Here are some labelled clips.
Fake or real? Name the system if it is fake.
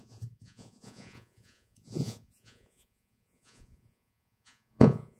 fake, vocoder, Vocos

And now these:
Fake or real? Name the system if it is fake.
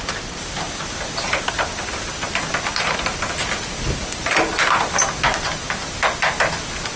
real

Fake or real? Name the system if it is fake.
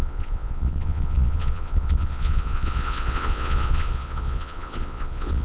fake, vocoder, Vocos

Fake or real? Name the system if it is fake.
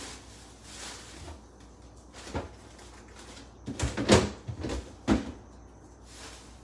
real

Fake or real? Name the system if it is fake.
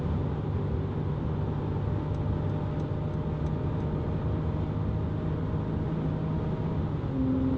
real